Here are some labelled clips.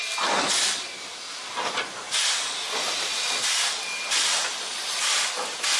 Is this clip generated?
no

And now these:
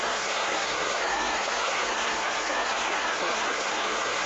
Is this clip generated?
yes